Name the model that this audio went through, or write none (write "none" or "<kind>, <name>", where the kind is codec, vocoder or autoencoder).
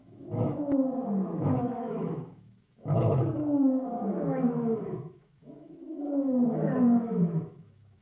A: autoencoder, DAC-VAE